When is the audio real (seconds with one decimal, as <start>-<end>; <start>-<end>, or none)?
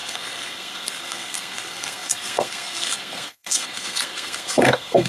none